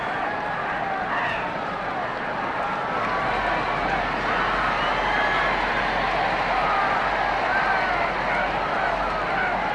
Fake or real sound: real